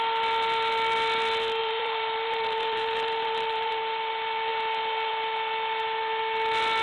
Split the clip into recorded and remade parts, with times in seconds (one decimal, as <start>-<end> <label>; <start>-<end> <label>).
0.0-1.6 recorded; 1.6-3.7 remade; 3.7-6.8 recorded